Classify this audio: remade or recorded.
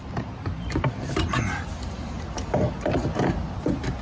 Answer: recorded